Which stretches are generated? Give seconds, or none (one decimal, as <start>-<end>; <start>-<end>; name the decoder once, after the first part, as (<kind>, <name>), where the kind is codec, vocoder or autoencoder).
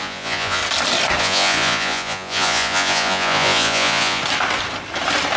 0.0-0.6 (vocoder, Vocos); 1.2-4.2